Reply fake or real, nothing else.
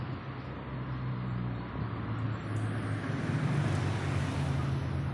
real